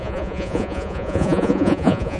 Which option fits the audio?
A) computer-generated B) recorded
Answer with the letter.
A